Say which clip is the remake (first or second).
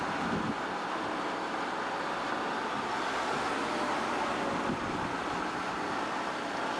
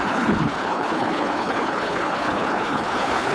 second